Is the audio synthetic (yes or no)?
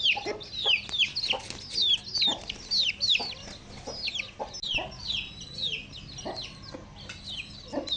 no